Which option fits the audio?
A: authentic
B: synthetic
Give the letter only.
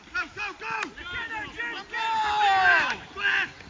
A